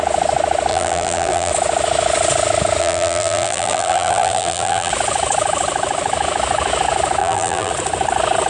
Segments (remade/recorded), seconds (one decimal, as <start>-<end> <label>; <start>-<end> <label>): 0.0-0.7 recorded; 0.7-1.5 remade; 1.5-2.8 recorded; 2.8-4.9 remade; 4.9-7.2 recorded; 7.2-7.7 remade; 7.7-8.5 recorded